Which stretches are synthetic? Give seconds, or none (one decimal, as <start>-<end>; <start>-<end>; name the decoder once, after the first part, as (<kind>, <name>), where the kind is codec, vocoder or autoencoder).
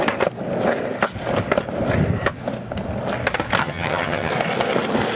3.6-4.3 (vocoder, HiFi-GAN)